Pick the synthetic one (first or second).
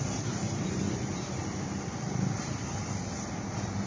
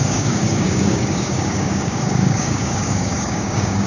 second